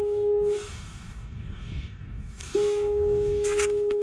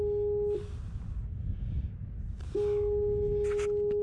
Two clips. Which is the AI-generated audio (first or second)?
first